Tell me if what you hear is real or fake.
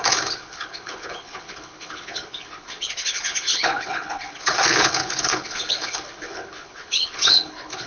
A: fake